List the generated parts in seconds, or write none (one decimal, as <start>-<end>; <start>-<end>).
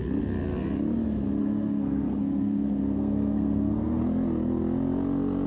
1.4-4.0